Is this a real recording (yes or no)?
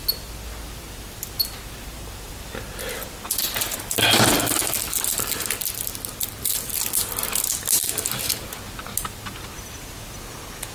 yes